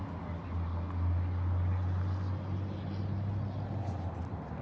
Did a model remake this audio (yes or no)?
no